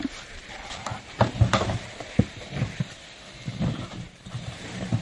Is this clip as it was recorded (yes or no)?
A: no